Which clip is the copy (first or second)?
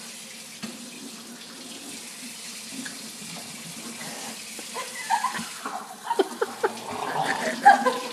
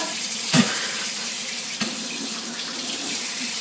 second